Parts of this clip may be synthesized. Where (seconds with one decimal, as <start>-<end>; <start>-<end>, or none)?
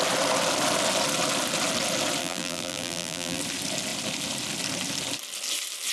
2.2-3.4